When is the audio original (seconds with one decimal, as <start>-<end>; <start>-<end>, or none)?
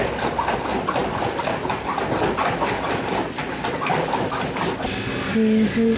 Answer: 0.0-6.0